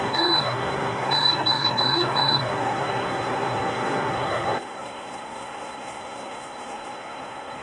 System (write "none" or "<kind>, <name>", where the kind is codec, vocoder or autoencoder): codec, SNAC